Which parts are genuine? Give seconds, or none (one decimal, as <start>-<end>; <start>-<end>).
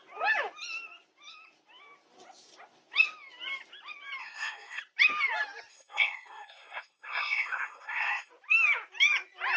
0.0-4.2; 4.8-5.7; 8.3-9.6